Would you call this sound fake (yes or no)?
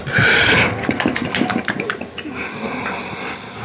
no